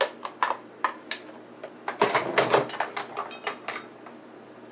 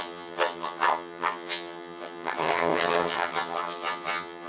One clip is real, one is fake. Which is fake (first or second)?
second